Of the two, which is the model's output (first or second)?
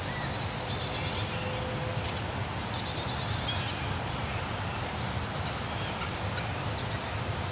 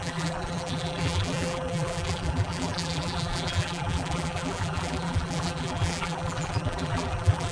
second